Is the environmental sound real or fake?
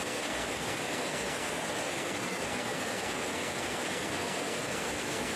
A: fake